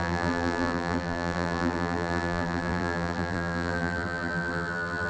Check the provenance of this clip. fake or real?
fake